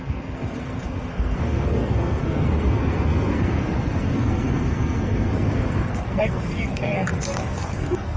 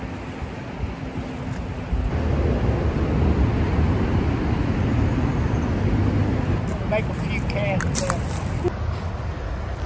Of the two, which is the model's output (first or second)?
first